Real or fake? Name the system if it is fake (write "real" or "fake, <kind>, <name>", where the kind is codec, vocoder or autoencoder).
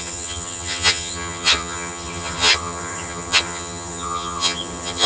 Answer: fake, vocoder, HiFi-GAN